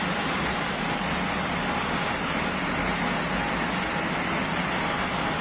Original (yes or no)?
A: yes